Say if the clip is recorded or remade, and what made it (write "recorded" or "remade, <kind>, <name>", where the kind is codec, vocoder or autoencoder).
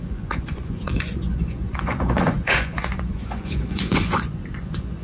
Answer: remade, vocoder, Vocos